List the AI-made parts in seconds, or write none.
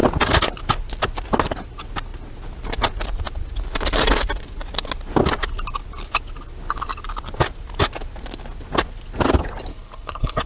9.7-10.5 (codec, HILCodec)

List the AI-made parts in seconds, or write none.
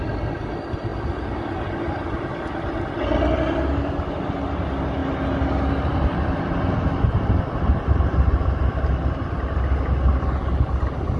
none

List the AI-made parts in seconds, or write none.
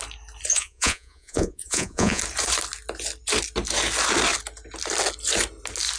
0.5-2.2 (vocoder, Vocos)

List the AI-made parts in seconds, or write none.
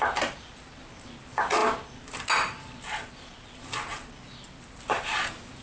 none